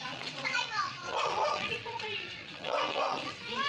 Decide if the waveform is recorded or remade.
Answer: remade